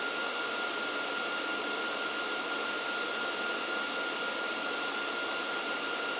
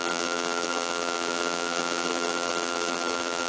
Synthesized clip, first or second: second